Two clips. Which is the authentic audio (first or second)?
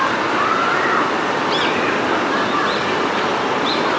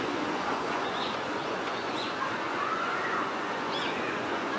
first